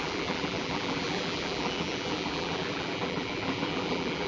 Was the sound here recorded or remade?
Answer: remade